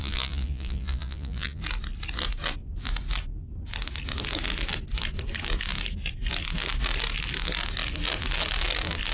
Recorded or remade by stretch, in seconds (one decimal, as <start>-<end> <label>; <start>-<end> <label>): 0.0-1.6 remade; 1.6-9.1 recorded